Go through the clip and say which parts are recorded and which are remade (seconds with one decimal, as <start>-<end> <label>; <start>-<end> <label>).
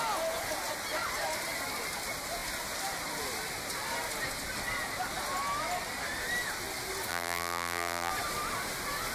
0.0-7.1 recorded; 7.1-8.1 remade; 8.1-9.1 recorded